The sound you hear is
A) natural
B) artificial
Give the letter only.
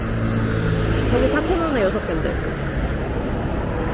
A